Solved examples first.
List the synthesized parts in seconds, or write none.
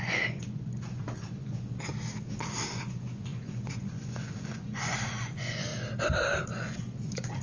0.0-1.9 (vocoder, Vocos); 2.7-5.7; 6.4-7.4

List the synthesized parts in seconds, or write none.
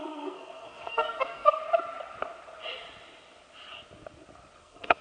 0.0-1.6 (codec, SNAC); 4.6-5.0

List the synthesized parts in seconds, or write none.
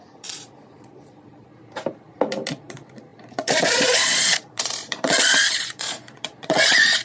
0.0-1.5 (vocoder, Vocos); 2.5-7.0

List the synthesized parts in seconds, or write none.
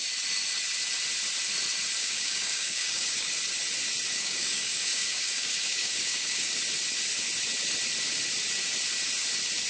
2.0-3.3 (codec, DAC); 4.1-6.6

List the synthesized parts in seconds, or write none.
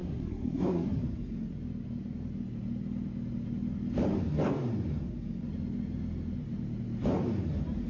0.0-1.0 (codec, SNAC)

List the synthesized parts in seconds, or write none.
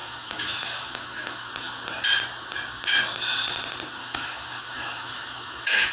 0.0-1.5 (autoencoder, DAC-VAE); 4.0-5.9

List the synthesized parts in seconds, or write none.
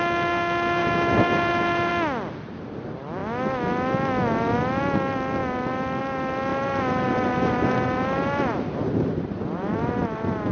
0.8-1.9 (vocoder, BigVGAN v2); 6.5-10.5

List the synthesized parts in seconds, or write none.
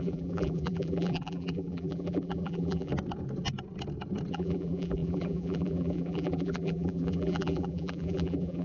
0.0-2.9 (vocoder, BigVGAN v2); 4.3-8.6